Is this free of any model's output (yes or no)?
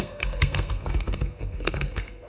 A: no